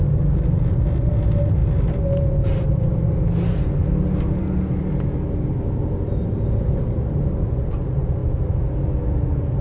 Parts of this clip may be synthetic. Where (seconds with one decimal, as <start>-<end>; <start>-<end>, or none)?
none